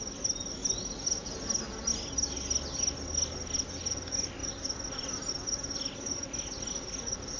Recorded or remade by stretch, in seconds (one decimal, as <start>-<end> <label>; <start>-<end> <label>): 0.0-7.4 recorded